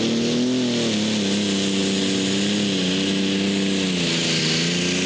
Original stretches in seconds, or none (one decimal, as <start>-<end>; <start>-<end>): 0.0-5.1